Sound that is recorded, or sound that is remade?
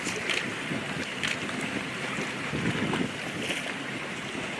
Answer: recorded